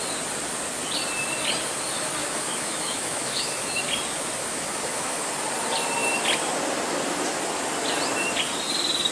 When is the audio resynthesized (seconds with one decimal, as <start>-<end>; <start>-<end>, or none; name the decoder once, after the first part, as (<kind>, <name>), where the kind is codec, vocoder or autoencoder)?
2.2-3.7 (autoencoder, DAC-VAE); 4.4-5.3